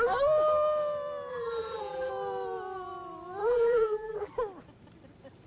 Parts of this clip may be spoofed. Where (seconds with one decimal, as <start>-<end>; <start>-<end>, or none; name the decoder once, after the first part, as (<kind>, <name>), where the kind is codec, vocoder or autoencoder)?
1.3-2.1 (vocoder, BigVGAN v2); 3.4-4.3